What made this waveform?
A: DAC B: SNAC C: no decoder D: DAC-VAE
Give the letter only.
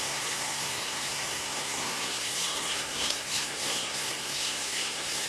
B